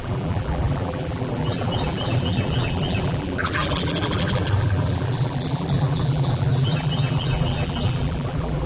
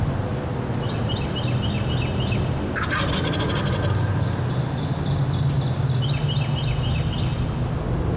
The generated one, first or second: first